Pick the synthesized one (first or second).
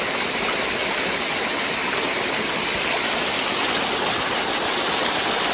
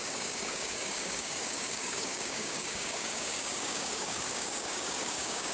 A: second